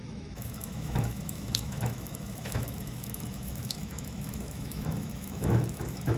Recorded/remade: remade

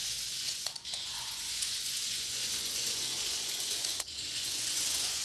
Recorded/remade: remade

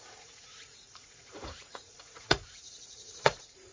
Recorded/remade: remade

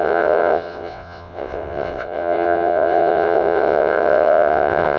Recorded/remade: remade